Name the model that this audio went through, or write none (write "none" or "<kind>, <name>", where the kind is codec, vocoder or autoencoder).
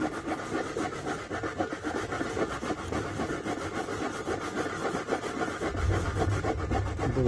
none